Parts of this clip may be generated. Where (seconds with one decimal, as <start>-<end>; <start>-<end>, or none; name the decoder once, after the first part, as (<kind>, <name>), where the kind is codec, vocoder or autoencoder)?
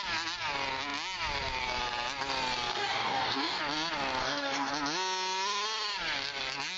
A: 2.7-3.6 (codec, DAC); 4.2-4.7